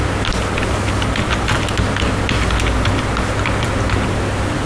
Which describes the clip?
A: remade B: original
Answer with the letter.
B